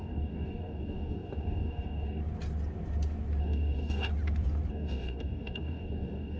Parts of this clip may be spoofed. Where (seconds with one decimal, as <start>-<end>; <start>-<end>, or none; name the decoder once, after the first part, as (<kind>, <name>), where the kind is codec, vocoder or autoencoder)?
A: 0.0-2.2 (codec, DAC); 3.4-4.1; 4.7-6.4